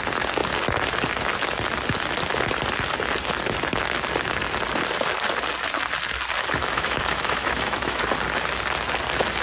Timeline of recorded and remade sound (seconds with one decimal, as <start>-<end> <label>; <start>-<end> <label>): 0.0-6.6 recorded; 6.6-8.0 remade; 8.0-9.4 recorded